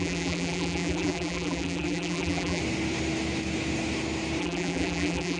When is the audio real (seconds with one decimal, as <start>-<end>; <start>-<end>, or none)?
2.6-4.4